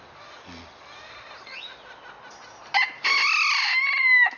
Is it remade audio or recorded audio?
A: recorded